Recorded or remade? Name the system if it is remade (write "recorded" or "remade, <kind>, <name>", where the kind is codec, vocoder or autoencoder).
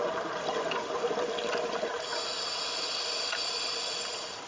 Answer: recorded